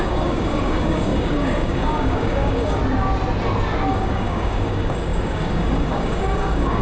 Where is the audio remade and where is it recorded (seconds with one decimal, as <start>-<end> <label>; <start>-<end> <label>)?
0.0-2.8 remade; 2.8-3.9 recorded; 3.9-6.8 remade